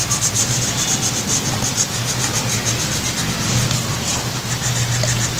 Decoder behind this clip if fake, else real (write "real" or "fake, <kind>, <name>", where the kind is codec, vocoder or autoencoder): real